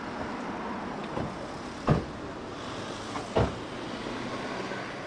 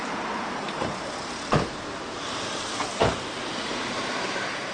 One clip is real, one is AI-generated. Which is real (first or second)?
first